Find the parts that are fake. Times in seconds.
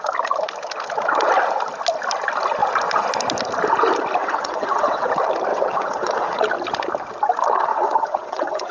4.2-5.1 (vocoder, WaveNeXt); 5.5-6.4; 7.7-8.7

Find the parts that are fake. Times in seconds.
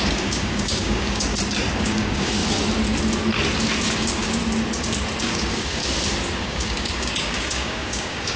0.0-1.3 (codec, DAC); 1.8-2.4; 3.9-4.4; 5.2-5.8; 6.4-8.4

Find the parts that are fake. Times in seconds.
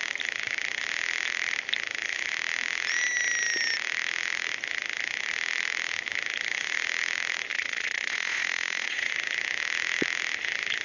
7.5-9.1 (vocoder, Vocos)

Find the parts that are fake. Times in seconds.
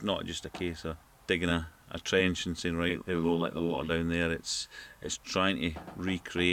2.9-3.9 (codec, SNAC); 4.5-5.1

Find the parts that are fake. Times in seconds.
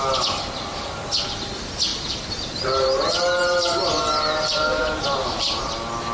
1.9-5.6 (vocoder, BigVGAN v2)